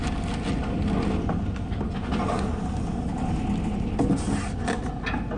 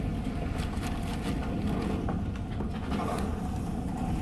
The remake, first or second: second